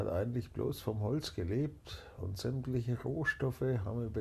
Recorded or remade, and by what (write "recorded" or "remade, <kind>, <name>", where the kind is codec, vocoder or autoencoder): recorded